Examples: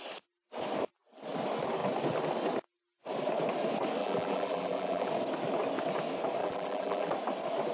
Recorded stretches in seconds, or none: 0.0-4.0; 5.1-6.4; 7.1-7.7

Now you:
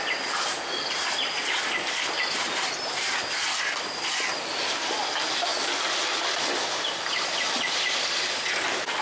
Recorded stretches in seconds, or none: 0.0-9.0

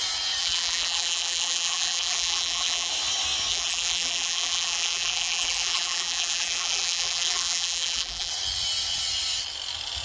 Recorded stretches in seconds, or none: 0.0-0.4; 2.9-3.5; 8.3-10.0

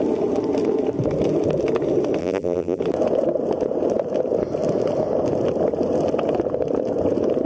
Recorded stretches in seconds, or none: 0.0-2.2; 2.8-7.5

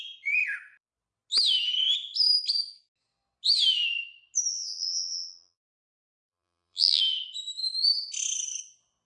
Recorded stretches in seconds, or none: 0.0-4.5; 7.0-9.1

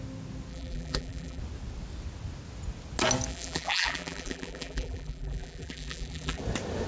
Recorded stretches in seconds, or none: 0.0-0.5; 1.4-3.3; 6.4-6.9

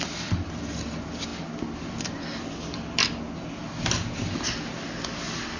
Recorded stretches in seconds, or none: 0.0-5.6